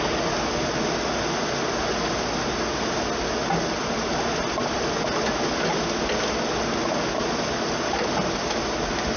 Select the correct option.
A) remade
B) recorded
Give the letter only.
B